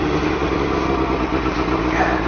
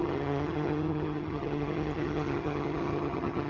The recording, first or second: first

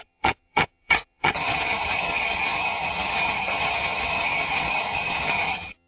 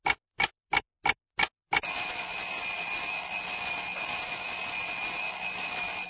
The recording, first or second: second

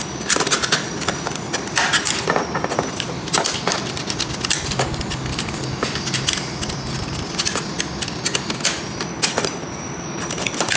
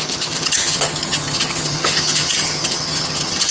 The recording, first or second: first